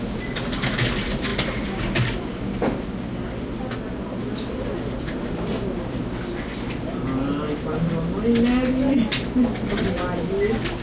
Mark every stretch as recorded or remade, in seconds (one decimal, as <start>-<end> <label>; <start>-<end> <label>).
0.0-10.8 recorded